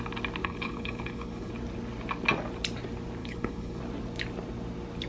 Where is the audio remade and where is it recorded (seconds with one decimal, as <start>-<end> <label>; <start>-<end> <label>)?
0.0-0.4 recorded; 0.4-1.5 remade; 1.5-3.2 recorded; 3.2-3.8 remade; 3.8-5.1 recorded